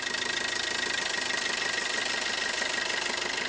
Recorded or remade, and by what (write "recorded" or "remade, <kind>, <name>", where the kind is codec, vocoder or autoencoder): recorded